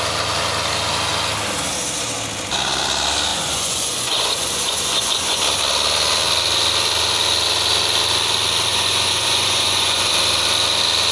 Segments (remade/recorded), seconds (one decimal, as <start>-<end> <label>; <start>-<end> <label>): 0.0-3.3 recorded; 3.3-5.4 remade; 5.4-8.7 recorded; 8.7-10.1 remade; 10.1-11.1 recorded